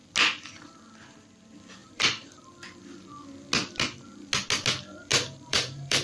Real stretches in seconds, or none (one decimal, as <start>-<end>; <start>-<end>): 0.0-1.8; 2.4-5.1